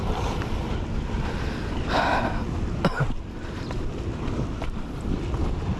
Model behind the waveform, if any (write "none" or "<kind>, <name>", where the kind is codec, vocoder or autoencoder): none